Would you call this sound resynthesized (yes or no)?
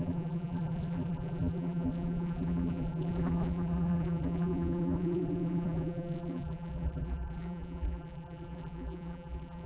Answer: yes